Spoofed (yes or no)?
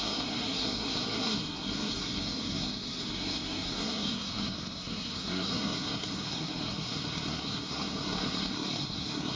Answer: yes